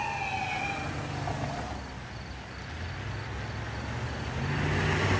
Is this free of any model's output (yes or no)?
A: yes